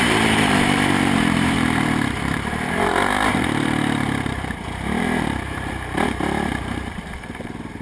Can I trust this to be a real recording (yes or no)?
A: no